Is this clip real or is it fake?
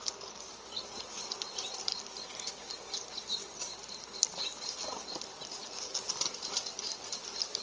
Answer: real